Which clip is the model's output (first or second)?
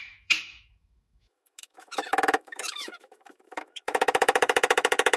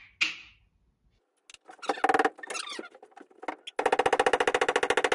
first